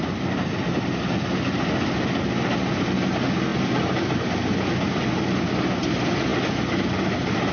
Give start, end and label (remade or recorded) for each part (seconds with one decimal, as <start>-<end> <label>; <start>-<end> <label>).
0.0-7.5 recorded

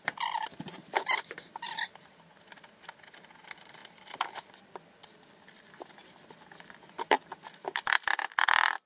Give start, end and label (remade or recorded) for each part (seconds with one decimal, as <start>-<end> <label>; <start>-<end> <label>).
0.0-8.9 recorded

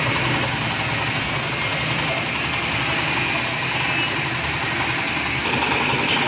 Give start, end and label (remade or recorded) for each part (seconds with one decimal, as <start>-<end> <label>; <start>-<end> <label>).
0.0-6.3 recorded